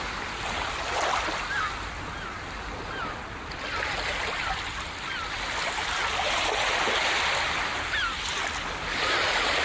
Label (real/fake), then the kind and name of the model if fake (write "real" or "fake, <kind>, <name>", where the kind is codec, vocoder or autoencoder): real